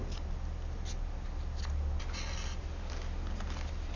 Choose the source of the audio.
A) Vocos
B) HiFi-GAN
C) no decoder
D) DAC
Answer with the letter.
C